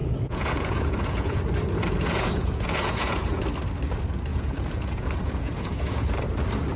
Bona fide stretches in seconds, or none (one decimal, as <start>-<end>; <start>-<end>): 1.4-1.8; 3.5-4.3; 6.1-6.8